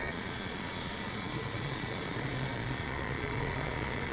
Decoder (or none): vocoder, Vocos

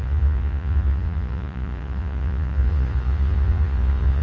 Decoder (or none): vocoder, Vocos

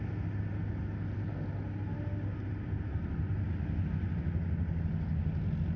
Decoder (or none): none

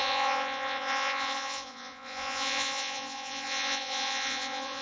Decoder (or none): vocoder, Vocos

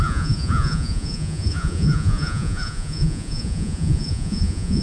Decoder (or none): vocoder, Vocos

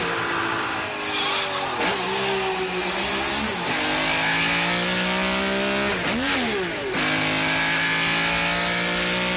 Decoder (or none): none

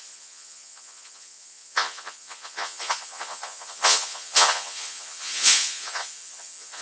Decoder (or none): vocoder, Vocos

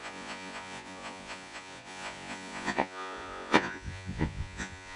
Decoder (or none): vocoder, Vocos